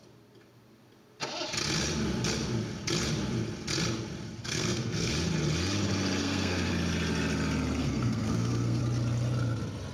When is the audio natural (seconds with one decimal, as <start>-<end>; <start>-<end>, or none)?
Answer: 0.0-4.4; 5.1-6.2; 6.7-7.8; 8.8-9.9